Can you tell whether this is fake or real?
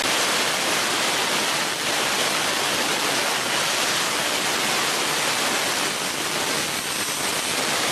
real